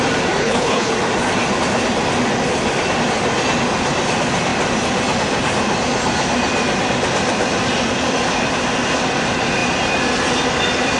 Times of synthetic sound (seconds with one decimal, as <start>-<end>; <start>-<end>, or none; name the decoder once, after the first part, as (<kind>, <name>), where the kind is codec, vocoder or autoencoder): 0.4-0.9 (codec, HILCodec)